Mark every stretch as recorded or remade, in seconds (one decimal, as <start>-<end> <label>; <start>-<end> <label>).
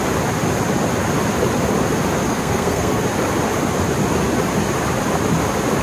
0.0-2.3 recorded; 2.3-3.0 remade; 3.0-5.8 recorded